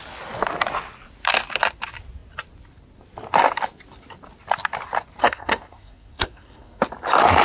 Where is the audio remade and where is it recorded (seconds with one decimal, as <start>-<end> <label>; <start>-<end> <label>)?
0.0-5.2 recorded; 5.2-6.8 remade; 6.8-7.4 recorded